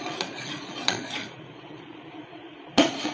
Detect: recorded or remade remade